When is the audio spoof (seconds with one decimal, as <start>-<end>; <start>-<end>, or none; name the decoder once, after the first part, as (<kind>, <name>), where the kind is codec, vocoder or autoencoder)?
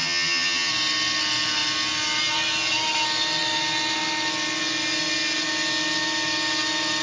0.0-0.7 (vocoder, HiFi-GAN)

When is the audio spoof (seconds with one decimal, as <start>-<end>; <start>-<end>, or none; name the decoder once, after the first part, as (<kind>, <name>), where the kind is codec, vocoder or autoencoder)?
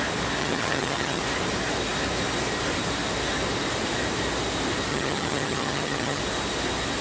0.4-1.2 (vocoder, HiFi-GAN); 4.9-6.2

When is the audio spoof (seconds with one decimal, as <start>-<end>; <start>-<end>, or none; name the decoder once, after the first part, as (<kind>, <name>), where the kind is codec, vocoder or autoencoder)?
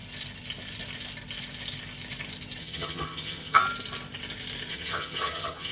2.6-3.6 (vocoder, HiFi-GAN); 4.7-5.7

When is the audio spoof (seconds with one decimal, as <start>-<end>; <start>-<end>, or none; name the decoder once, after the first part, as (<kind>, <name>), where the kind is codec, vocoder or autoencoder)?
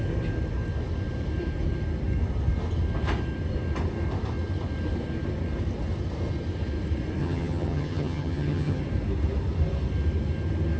7.2-8.8 (vocoder, HiFi-GAN)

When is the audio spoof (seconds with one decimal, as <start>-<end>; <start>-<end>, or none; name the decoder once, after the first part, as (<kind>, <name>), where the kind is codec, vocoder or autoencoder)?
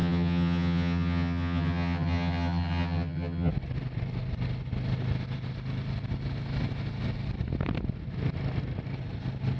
0.0-3.5 (vocoder, HiFi-GAN)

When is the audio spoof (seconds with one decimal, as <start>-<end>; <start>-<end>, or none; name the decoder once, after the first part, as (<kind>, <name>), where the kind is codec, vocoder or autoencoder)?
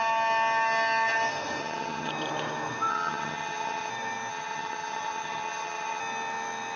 1.6-2.1 (vocoder, HiFi-GAN); 2.9-3.9; 4.3-6.0